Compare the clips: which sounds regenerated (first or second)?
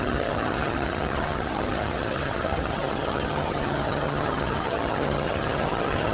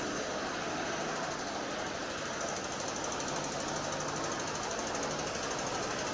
first